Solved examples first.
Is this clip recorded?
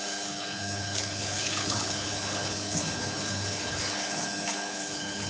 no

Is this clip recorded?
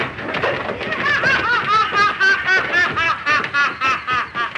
yes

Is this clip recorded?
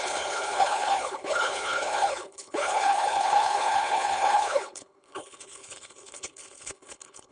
no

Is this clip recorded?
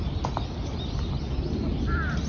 yes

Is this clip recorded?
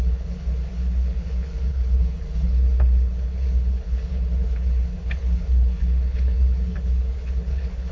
no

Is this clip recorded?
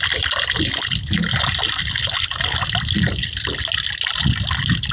yes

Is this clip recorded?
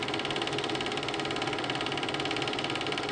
yes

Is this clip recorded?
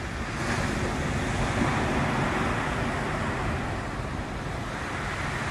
yes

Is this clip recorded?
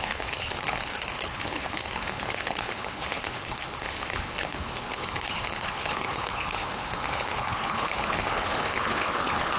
no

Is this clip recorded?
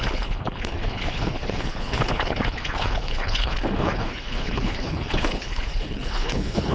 no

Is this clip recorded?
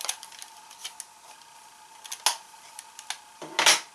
yes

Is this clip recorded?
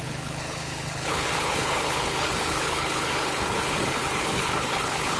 no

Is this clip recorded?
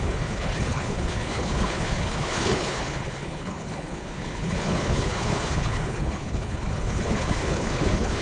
no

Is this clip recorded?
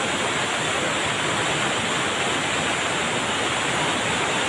yes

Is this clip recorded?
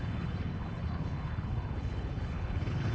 no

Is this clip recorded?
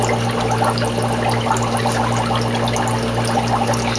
yes